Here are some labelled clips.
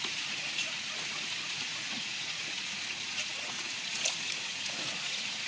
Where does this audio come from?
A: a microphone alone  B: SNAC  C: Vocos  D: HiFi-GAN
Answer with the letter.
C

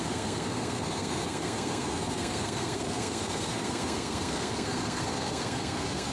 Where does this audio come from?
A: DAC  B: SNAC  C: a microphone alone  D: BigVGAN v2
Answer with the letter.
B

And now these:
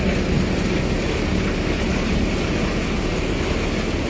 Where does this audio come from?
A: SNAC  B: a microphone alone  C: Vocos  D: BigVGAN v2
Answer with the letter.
B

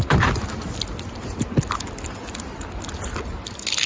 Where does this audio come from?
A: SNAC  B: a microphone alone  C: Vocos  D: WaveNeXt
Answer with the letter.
B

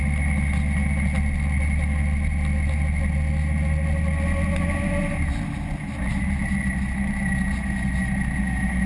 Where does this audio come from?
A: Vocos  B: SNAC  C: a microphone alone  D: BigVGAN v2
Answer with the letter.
C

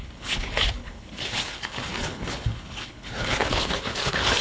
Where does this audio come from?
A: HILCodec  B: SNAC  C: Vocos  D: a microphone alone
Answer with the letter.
A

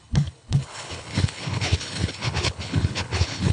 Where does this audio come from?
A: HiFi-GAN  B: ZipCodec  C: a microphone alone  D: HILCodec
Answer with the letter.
D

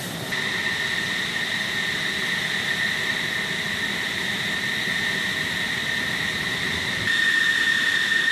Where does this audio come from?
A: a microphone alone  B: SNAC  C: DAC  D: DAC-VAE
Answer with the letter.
A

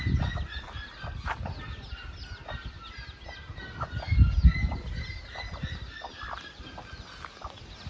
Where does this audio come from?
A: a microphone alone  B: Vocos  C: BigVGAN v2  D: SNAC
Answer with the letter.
A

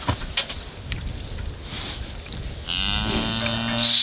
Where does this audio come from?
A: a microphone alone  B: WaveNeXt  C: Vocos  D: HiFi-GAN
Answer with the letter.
A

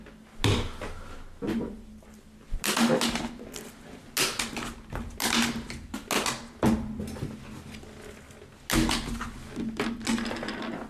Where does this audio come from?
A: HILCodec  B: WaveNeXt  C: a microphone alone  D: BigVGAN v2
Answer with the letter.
C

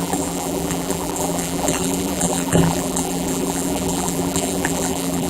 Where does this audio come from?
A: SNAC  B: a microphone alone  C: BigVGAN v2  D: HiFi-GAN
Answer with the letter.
C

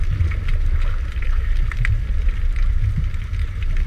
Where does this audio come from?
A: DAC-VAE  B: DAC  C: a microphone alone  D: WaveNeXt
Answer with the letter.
C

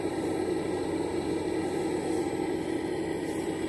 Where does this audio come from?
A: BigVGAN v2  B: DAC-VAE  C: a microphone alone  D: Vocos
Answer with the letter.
C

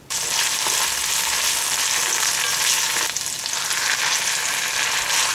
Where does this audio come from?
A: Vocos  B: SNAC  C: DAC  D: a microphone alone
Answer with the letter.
D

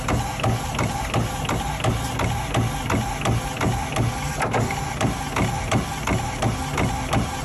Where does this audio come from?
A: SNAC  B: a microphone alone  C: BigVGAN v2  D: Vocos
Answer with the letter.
B